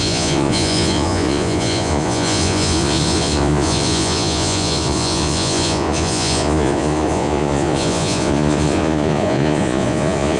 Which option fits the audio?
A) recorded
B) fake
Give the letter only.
B